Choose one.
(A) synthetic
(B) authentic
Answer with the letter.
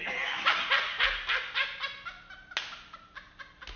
B